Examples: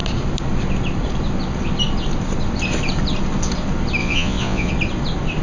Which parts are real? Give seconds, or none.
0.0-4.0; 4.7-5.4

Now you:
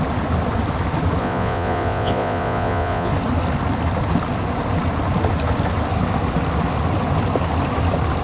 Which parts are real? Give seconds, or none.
0.0-1.2; 3.1-8.2